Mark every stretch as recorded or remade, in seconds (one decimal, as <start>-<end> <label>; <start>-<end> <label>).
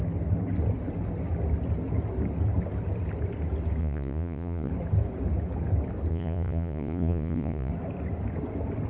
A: 0.0-3.8 recorded; 3.8-4.7 remade; 4.7-6.1 recorded; 6.1-7.7 remade; 7.7-8.9 recorded